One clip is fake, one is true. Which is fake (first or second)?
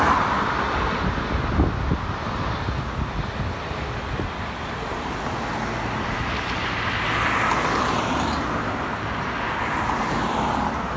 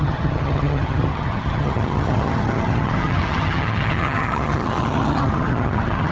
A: second